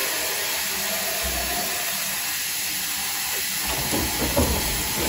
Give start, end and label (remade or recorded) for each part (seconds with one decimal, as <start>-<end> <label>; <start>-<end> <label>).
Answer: 0.0-5.1 recorded